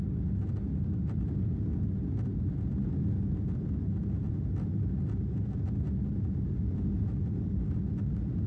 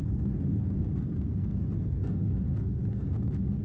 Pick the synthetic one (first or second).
second